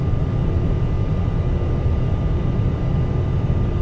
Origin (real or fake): real